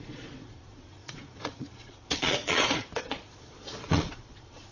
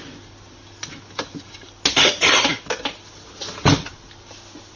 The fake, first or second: first